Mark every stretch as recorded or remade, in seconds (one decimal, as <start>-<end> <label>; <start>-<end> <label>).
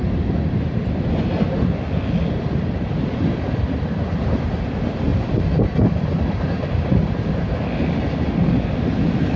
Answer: 0.0-9.4 recorded